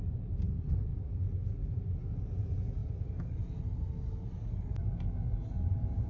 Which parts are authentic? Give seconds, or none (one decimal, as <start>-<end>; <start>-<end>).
0.9-2.0; 2.8-5.6